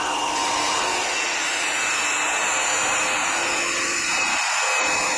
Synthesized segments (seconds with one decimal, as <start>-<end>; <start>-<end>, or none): 0.0-0.4; 3.5-4.3